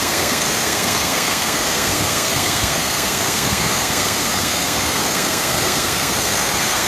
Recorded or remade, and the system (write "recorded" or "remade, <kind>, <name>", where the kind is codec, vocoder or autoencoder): remade, codec, SNAC